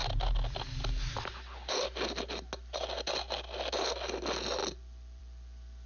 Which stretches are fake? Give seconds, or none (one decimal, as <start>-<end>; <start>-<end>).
none